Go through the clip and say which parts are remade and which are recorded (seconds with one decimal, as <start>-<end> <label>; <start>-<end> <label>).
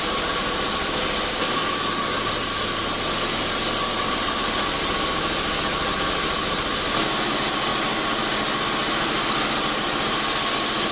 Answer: 0.0-10.9 recorded